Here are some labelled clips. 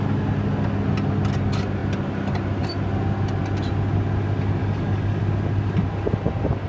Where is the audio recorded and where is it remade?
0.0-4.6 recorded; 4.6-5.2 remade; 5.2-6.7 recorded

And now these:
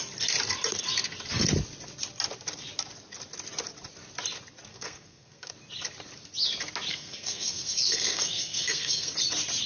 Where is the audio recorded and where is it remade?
0.0-4.7 recorded; 4.7-5.5 remade; 5.5-6.9 recorded; 6.9-9.1 remade; 9.1-9.7 recorded

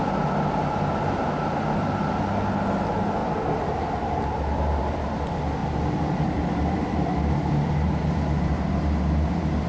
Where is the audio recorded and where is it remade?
0.0-3.2 recorded; 3.2-4.8 remade; 4.8-5.6 recorded; 5.6-8.7 remade; 8.7-9.7 recorded

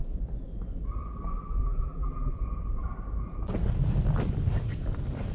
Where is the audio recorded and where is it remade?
0.0-1.6 recorded; 1.6-2.3 remade; 2.3-5.3 recorded

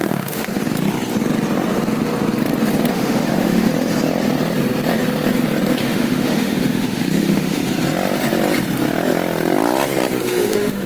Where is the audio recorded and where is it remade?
0.0-0.5 remade; 0.5-2.9 recorded; 2.9-3.7 remade; 3.7-5.8 recorded; 5.8-7.6 remade; 7.6-10.2 recorded; 10.2-10.9 remade